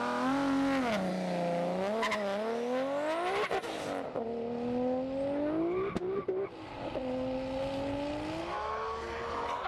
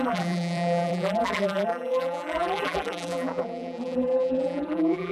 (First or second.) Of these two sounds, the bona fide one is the first